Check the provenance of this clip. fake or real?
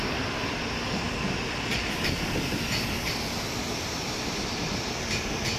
real